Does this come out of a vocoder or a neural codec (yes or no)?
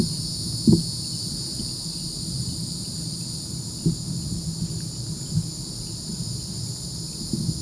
no